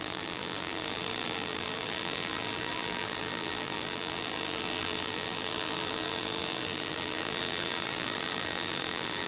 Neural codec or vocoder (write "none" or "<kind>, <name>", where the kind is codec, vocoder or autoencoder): vocoder, BigVGAN v2